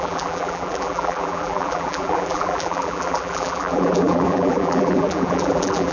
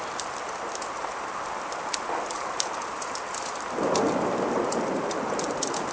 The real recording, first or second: second